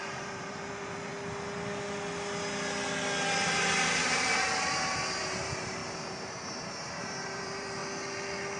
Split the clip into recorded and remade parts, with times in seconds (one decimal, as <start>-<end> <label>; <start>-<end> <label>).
0.0-1.1 remade; 1.1-4.0 recorded; 4.0-5.8 remade; 5.8-6.8 recorded; 6.8-7.8 remade; 7.8-8.6 recorded